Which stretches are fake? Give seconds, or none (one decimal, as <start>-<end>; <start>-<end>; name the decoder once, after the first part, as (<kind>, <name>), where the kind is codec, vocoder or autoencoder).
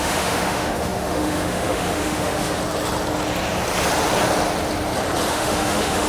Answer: 0.0-2.6 (autoencoder, DAC-VAE); 5.3-6.1